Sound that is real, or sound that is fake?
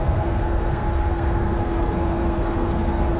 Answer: fake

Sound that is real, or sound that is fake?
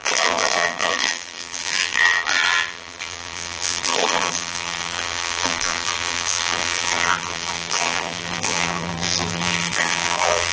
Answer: fake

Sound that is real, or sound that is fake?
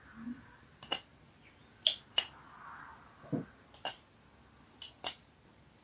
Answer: real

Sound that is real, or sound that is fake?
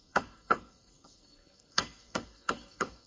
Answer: fake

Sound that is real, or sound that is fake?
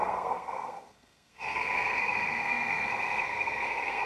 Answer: fake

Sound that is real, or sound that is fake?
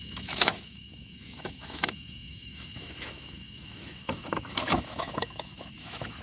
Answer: fake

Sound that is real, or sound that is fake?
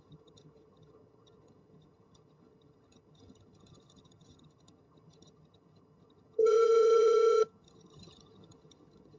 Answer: fake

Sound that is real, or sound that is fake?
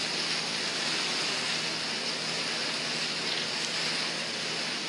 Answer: real